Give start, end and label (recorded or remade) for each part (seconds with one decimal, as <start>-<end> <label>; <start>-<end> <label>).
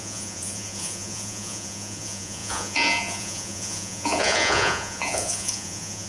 0.0-6.1 remade